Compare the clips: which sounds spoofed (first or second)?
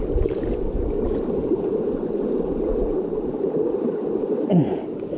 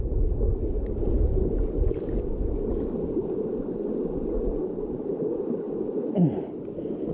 first